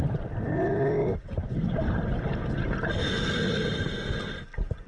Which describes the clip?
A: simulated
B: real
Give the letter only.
B